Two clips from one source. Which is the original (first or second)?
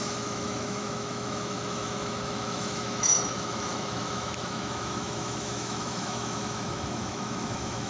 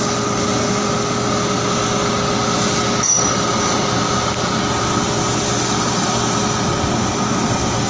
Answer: second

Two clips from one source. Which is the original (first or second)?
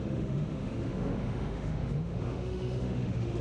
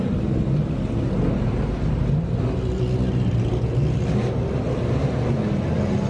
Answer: second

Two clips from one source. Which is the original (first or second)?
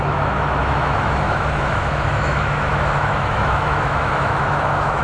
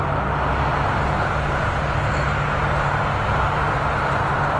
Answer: second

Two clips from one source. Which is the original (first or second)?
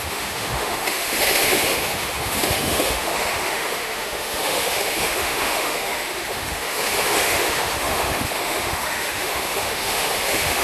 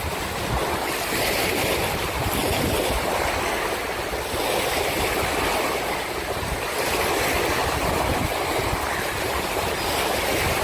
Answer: second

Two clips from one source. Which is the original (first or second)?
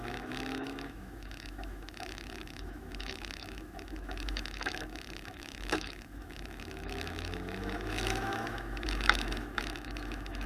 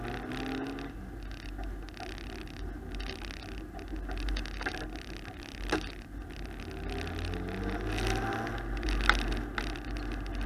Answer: second